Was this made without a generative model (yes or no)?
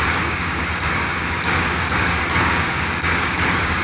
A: no